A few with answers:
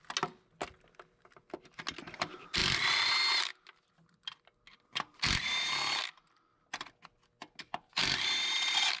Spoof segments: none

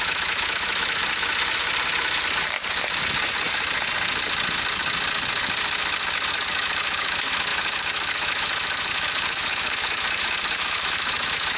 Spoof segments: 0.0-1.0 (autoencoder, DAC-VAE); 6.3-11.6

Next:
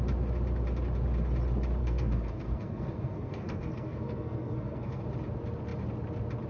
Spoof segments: 1.8-5.0 (codec, SNAC)